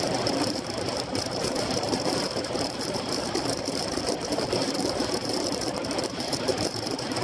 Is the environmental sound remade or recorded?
remade